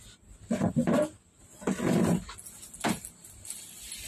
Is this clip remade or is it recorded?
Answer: recorded